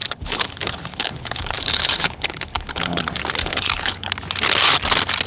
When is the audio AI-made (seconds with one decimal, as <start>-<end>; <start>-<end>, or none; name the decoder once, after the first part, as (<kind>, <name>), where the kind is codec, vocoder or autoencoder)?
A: 0.0-3.0 (codec, HILCodec); 3.4-4.1